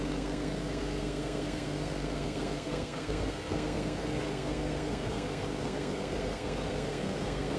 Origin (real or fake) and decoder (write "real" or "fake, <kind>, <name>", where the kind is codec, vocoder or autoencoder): fake, codec, SNAC